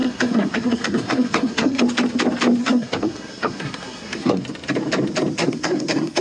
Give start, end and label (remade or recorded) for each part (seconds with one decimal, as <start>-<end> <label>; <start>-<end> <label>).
0.0-1.8 remade; 1.8-2.6 recorded; 2.6-4.4 remade; 4.4-5.4 recorded; 5.4-6.2 remade